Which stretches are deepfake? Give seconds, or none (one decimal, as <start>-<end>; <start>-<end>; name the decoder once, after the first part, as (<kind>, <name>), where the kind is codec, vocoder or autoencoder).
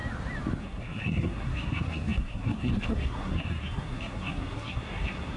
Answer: 0.6-5.4 (codec, SNAC)